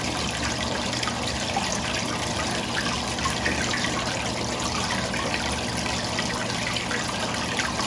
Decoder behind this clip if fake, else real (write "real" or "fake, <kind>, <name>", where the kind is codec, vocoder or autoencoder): real